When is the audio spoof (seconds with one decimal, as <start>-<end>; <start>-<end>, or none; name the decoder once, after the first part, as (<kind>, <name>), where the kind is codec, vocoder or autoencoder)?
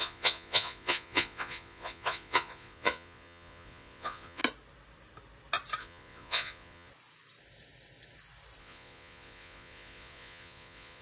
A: 0.0-4.4 (vocoder, Vocos); 5.8-6.9; 8.6-11.0